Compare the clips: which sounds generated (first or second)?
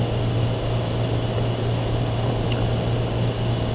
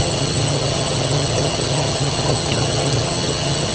second